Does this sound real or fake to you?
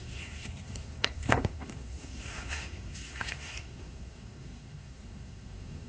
fake